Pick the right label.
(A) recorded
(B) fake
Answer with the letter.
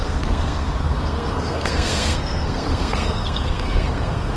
B